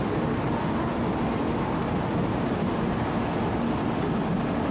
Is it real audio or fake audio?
real